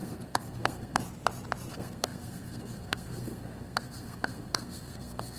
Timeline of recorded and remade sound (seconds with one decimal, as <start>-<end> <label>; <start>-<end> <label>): 0.0-1.0 remade; 1.0-1.7 recorded; 1.7-5.4 remade